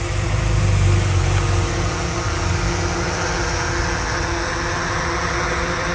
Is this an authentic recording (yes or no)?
yes